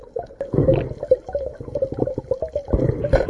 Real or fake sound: real